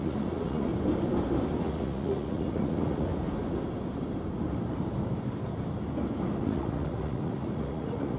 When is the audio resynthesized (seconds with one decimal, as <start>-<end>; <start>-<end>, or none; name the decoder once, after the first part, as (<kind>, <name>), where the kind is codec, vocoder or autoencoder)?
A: 0.0-0.7 (vocoder, Vocos); 1.6-3.1; 6.4-8.2